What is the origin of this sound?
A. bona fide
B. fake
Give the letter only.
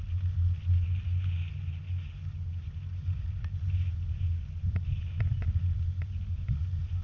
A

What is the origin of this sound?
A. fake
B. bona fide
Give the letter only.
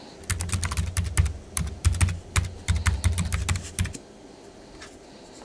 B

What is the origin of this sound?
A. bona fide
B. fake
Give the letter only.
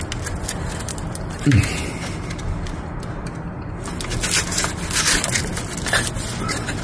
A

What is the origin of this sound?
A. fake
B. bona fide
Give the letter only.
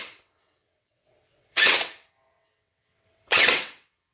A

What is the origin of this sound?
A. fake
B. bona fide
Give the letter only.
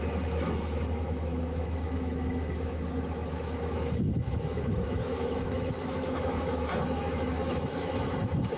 A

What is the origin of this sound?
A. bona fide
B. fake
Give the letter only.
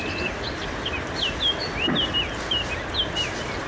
A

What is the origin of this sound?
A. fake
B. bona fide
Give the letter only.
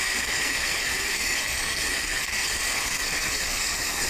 A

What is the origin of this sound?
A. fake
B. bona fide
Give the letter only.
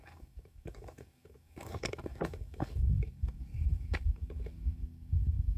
A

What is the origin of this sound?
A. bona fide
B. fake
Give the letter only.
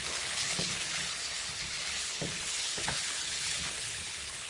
B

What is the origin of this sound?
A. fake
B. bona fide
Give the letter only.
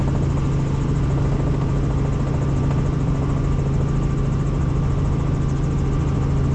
B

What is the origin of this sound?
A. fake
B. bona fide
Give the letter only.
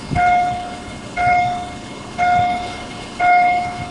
A